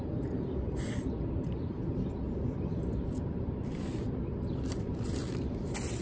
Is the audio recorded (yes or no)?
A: no